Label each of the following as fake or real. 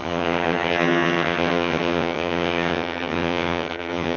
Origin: fake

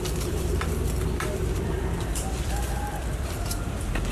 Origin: fake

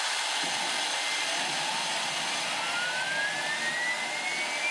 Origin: real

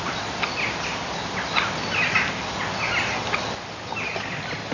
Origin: real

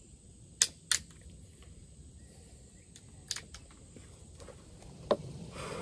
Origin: real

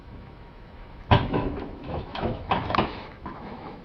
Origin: fake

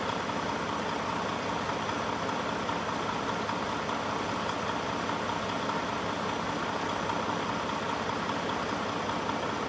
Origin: real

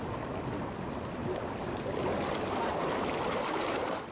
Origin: real